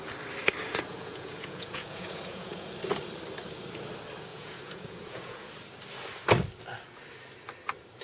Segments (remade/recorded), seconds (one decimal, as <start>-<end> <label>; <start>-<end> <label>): 0.0-0.9 recorded; 0.9-2.7 remade; 2.7-4.3 recorded; 4.3-5.5 remade; 5.5-8.0 recorded